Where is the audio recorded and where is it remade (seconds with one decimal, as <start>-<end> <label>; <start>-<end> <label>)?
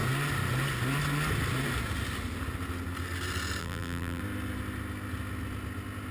0.0-3.6 recorded; 3.6-4.2 remade; 4.2-6.1 recorded